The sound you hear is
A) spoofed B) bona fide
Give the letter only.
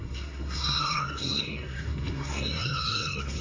A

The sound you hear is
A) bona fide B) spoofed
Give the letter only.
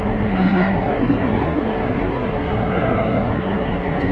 B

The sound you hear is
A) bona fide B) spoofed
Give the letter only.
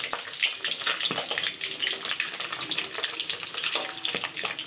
A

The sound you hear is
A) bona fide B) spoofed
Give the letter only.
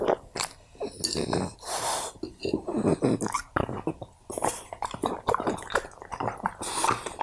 A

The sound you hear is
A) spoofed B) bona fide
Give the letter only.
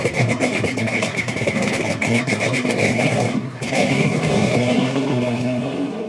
A